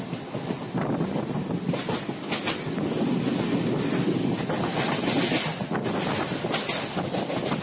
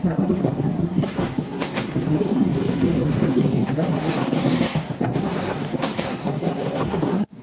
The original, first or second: first